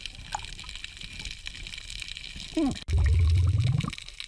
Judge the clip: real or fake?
real